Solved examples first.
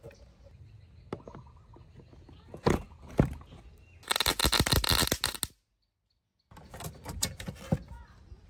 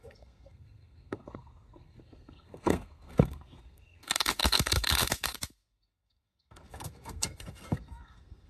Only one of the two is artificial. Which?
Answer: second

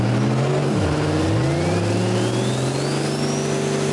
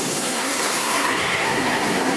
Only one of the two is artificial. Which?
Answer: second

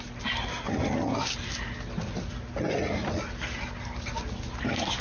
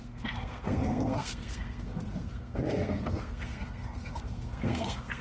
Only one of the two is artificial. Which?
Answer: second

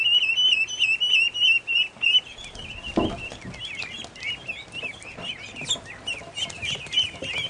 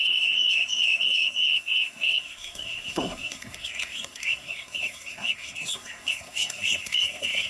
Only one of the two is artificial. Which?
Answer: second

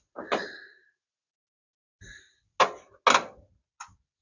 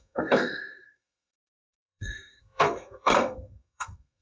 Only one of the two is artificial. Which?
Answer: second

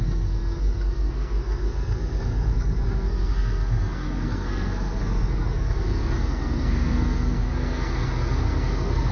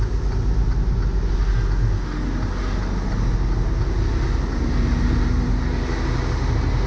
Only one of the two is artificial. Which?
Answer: first